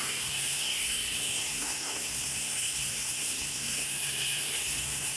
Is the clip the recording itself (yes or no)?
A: no